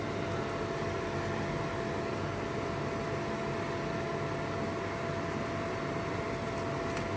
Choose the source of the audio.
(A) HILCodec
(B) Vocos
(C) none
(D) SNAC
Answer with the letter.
C